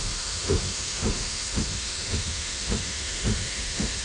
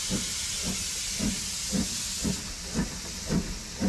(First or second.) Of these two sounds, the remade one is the first